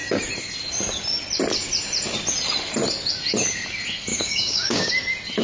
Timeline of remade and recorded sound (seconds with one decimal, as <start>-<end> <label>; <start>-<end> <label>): 0.0-4.1 recorded; 4.1-4.9 remade; 4.9-5.4 recorded